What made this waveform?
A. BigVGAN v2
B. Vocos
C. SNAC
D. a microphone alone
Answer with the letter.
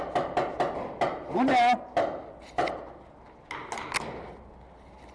D